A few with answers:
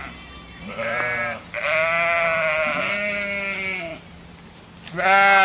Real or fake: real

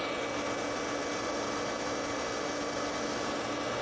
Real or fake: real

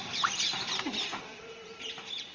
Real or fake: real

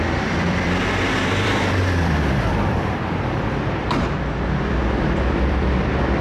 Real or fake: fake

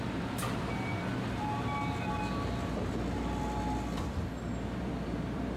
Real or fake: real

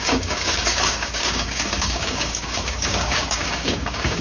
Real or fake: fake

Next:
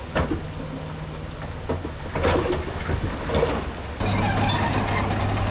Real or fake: real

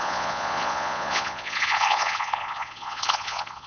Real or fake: fake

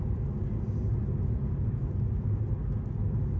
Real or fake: real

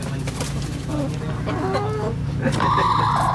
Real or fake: real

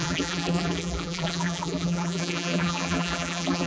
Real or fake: fake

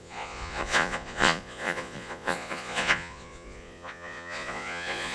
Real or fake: fake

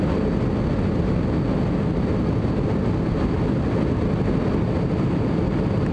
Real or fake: real